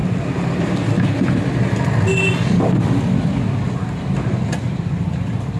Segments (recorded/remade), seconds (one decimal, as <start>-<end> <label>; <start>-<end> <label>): 0.0-5.6 recorded